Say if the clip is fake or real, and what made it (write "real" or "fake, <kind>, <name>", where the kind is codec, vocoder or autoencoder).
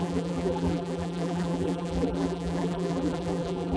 fake, vocoder, BigVGAN v2